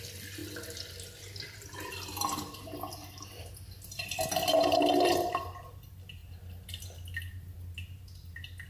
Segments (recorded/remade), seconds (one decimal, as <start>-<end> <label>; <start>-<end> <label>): 0.0-8.7 recorded